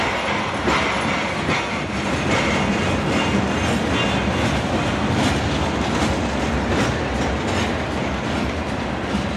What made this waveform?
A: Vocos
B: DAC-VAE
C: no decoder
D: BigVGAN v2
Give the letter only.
C